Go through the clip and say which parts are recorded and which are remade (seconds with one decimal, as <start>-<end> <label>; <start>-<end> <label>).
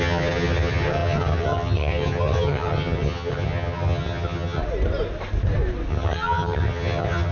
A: 0.0-4.6 remade; 4.6-5.9 recorded; 5.9-7.3 remade